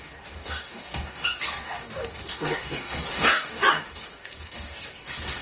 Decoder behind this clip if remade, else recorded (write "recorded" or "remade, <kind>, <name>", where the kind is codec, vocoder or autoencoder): remade, codec, DAC